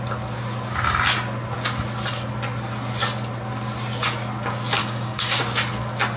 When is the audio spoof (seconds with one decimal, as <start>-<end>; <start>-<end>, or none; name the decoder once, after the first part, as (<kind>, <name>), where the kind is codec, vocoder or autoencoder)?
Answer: 4.8-5.4 (codec, DAC)